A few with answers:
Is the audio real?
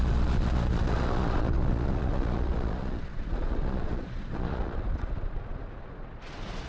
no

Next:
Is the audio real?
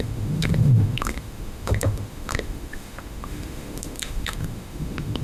no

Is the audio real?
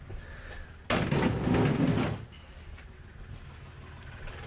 yes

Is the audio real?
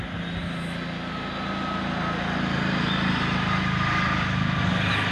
yes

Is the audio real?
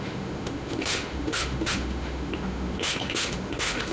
no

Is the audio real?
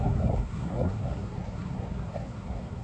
no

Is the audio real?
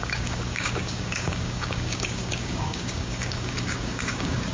no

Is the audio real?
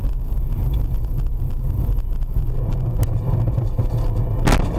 yes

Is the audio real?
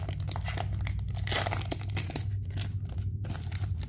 yes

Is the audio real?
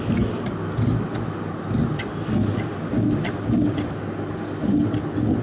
yes